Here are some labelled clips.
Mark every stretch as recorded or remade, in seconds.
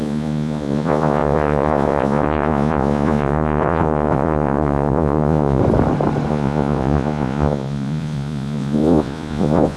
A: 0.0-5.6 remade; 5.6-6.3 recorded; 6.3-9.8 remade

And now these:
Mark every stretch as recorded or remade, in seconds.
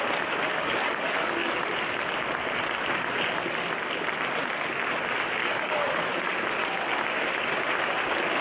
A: 0.0-0.6 recorded; 0.6-1.6 remade; 1.6-5.4 recorded; 5.4-6.1 remade; 6.1-8.4 recorded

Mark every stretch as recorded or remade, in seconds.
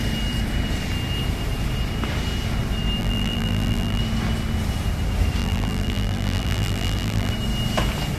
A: 0.0-3.0 recorded; 3.0-4.0 remade; 4.0-5.4 recorded; 5.4-7.3 remade; 7.3-8.2 recorded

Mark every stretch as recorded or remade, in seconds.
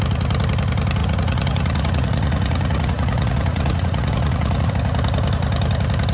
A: 0.0-1.0 recorded; 1.0-4.7 remade; 4.7-6.1 recorded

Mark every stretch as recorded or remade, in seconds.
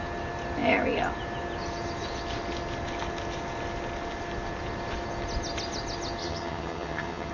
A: 0.0-6.2 recorded; 6.2-7.3 remade